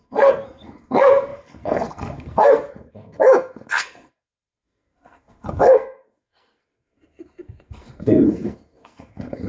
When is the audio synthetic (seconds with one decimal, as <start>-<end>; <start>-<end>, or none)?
0.0-9.5